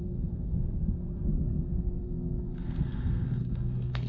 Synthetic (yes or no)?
yes